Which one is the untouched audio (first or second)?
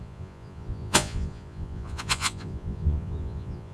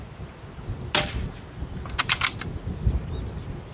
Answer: second